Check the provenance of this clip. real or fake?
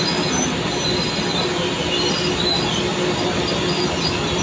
real